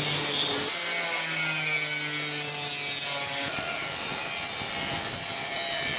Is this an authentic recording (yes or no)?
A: yes